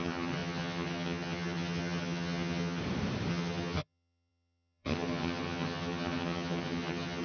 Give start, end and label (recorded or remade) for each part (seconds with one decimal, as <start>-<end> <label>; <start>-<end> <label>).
0.0-2.8 remade; 2.8-3.3 recorded; 3.3-7.2 remade

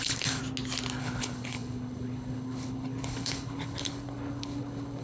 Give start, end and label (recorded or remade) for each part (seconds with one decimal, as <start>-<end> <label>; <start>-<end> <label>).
0.0-0.4 remade; 0.4-1.0 recorded; 1.0-5.0 remade

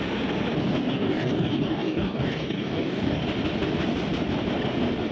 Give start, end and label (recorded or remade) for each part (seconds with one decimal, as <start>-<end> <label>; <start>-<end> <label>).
0.0-0.9 recorded; 0.9-3.2 remade; 3.2-5.1 recorded

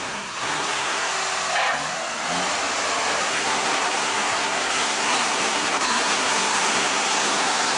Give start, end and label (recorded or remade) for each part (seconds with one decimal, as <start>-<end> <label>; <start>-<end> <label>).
0.0-1.1 remade; 1.1-3.2 recorded; 3.2-7.8 remade